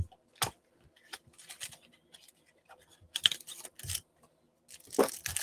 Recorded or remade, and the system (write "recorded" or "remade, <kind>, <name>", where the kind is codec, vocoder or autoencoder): recorded